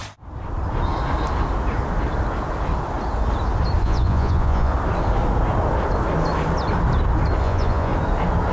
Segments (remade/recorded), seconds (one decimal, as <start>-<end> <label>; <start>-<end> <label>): 0.0-3.8 recorded; 3.8-4.7 remade; 4.7-7.4 recorded; 7.4-7.9 remade; 7.9-8.5 recorded